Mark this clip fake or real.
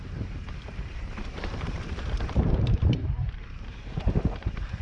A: fake